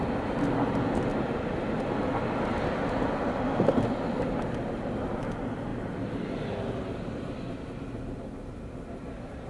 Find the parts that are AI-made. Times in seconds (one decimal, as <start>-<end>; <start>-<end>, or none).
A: none